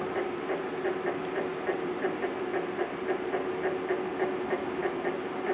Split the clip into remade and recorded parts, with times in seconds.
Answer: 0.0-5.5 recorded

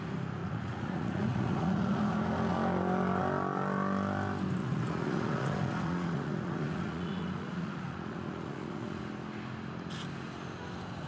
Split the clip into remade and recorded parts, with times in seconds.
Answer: 0.0-0.4 recorded; 0.4-2.0 remade; 2.0-4.6 recorded; 4.6-9.0 remade; 9.0-11.1 recorded

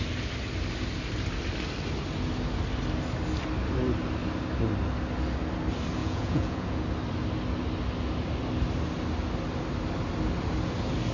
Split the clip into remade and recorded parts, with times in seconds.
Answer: 0.0-6.0 recorded; 6.0-6.8 remade; 6.8-11.1 recorded